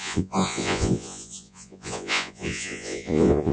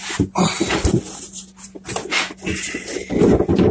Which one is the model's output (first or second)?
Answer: first